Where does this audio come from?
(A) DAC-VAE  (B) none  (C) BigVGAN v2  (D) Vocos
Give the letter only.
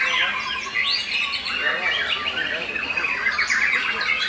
B